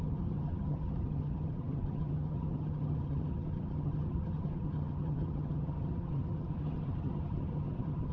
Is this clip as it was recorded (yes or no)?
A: no